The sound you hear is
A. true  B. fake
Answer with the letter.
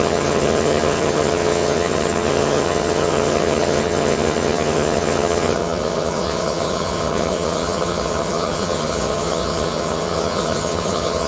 B